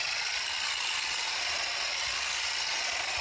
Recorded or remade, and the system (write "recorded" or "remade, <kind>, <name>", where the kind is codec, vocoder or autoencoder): recorded